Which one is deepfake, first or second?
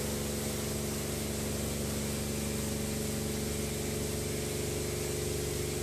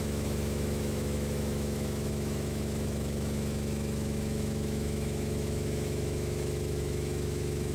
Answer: second